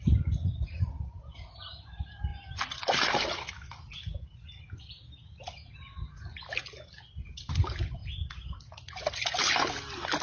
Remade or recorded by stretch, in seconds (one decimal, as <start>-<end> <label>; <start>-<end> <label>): 0.0-10.2 recorded